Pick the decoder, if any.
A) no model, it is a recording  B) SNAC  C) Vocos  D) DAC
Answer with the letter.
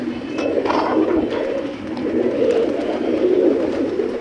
A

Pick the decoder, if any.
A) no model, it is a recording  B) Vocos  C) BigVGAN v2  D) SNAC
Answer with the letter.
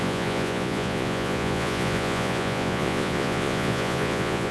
B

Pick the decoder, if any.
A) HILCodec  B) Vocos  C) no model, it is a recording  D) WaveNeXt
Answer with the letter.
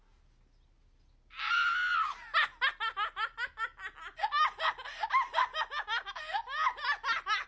C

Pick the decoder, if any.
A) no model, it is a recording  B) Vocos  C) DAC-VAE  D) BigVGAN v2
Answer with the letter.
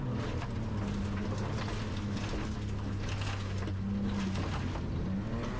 A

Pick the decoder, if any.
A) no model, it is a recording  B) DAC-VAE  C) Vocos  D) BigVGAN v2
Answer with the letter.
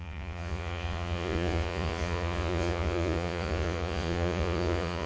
C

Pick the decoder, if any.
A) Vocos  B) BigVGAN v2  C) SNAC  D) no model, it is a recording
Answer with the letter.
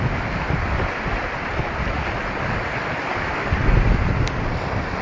D